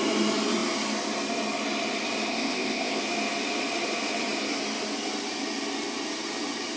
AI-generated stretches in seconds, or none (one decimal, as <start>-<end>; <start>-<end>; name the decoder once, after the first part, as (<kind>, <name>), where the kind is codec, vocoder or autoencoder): 2.3-3.0 (codec, ZipCodec)

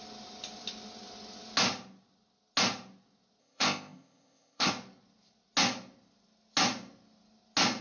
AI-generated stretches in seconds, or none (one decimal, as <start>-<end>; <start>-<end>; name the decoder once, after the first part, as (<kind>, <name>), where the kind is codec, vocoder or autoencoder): 3.4-4.7 (codec, ZipCodec)

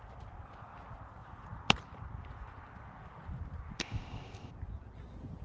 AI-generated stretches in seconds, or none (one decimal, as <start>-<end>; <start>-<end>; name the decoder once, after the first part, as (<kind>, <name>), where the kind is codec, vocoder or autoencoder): 3.8-4.5 (codec, ZipCodec)

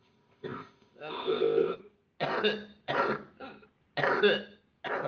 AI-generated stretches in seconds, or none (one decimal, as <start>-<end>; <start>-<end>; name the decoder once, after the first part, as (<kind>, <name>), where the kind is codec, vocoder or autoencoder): 0.0-1.8 (codec, ZipCodec)

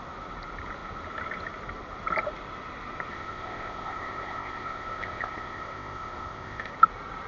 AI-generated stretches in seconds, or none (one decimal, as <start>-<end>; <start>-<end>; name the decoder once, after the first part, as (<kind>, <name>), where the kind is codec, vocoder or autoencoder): 3.1-6.7 (codec, ZipCodec)

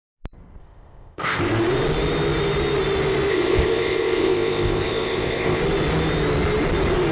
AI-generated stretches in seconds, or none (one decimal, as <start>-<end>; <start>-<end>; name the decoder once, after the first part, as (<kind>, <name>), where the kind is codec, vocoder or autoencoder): 0.6-1.4 (codec, ZipCodec); 3.3-5.6

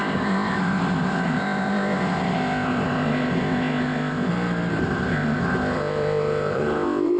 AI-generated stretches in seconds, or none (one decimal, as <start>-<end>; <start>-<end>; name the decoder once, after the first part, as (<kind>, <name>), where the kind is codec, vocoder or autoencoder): 0.0-4.3 (codec, ZipCodec); 4.8-7.2